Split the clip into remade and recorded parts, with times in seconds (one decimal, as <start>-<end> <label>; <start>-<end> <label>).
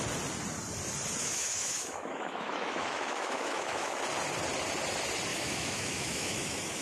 0.0-1.2 recorded; 1.2-4.0 remade; 4.0-5.3 recorded; 5.3-6.8 remade